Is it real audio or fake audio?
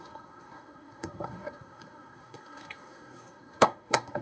fake